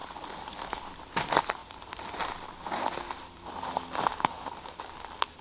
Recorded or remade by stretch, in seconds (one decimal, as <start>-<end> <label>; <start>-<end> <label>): 0.0-5.4 recorded